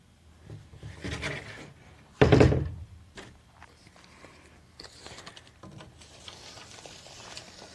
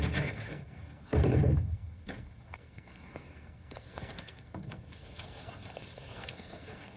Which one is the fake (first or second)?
second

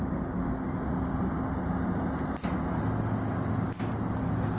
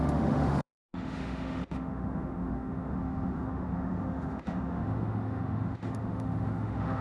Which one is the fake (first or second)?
second